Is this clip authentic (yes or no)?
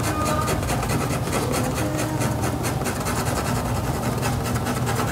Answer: yes